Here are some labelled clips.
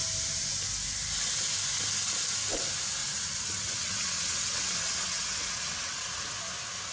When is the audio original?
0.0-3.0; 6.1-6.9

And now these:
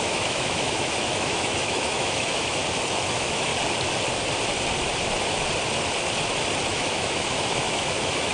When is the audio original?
2.6-3.1; 3.5-6.7

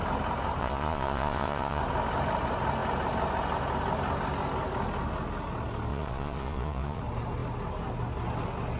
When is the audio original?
0.0-0.6; 1.8-5.9; 7.0-8.8

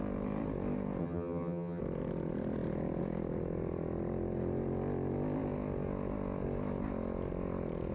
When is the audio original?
0.0-1.0; 1.8-7.9

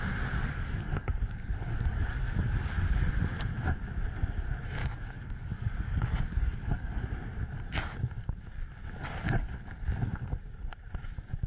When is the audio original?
0.0-0.4; 3.1-4.8; 7.0-11.5

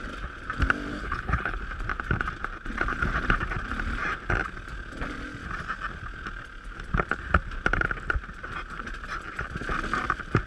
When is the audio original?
0.0-0.9; 1.6-10.5

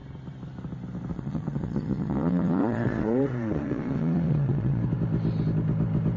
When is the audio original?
0.0-1.1; 4.8-6.2

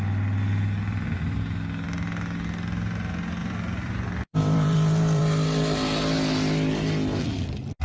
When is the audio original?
0.0-3.4; 5.2-7.8